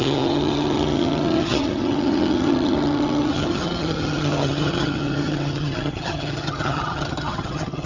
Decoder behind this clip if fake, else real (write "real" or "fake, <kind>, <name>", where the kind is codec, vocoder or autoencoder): fake, vocoder, HiFi-GAN